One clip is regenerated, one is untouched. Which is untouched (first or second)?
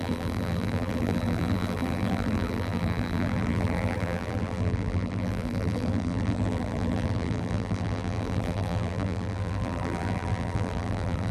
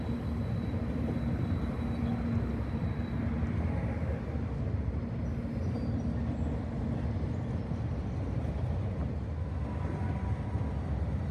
second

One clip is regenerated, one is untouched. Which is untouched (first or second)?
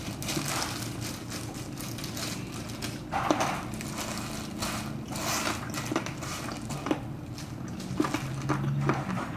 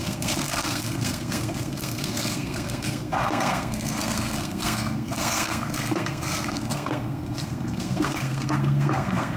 first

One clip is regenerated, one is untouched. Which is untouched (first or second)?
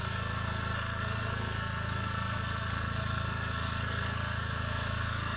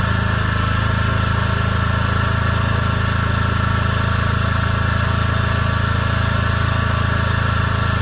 second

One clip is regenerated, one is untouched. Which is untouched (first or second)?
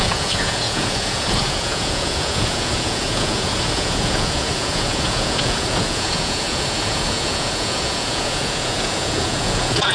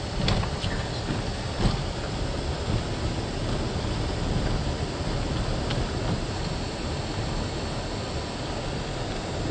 second